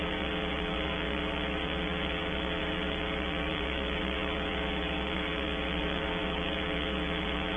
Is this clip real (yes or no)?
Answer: no